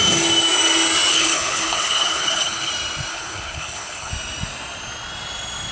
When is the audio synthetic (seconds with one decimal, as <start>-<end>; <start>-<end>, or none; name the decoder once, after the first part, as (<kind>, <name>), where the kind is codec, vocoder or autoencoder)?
1.1-2.7 (codec, HILCodec); 3.1-4.1